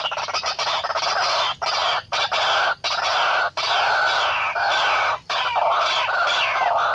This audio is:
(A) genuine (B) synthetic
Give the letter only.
A